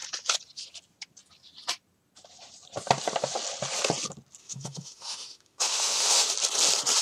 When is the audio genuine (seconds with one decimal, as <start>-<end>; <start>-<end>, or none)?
0.0-4.4; 6.3-7.0